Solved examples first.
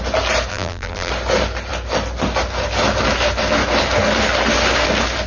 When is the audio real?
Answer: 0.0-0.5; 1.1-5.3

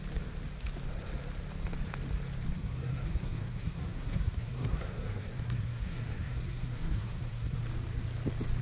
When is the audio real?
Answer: 0.0-2.5; 7.6-8.6

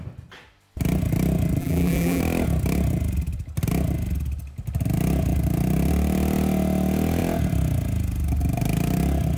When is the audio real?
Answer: 0.0-1.6; 2.2-9.4

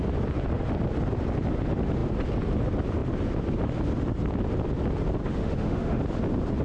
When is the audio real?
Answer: 0.0-5.2; 6.0-6.6

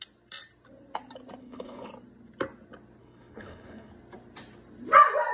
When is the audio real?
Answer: 0.0-1.4; 1.9-3.0; 3.9-5.3